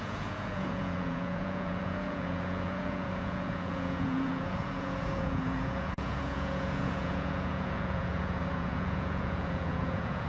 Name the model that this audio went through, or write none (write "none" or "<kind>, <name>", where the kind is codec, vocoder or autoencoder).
vocoder, Vocos